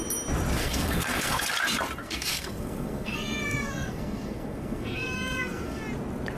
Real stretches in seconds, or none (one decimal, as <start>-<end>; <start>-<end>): 0.0-0.6; 1.5-2.0; 5.8-6.4